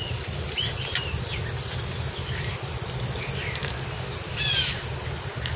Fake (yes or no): no